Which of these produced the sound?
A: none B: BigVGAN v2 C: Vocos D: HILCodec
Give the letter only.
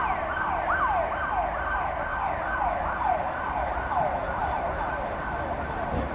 A